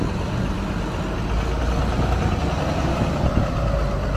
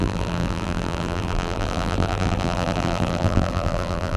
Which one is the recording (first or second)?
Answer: first